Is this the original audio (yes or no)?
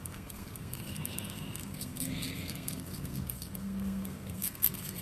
no